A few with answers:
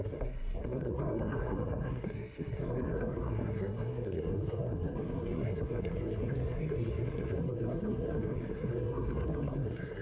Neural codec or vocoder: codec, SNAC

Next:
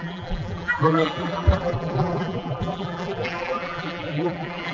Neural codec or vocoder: vocoder, BigVGAN v2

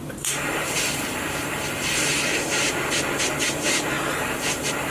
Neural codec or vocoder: vocoder, BigVGAN v2